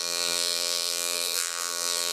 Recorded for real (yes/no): no